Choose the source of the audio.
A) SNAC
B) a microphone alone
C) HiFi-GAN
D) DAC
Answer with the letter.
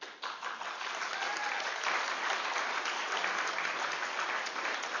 B